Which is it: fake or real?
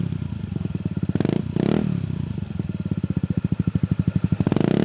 real